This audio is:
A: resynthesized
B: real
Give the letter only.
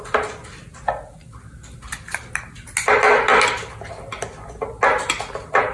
B